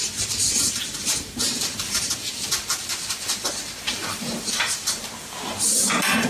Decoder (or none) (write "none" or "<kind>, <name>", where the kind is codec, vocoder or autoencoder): vocoder, BigVGAN v2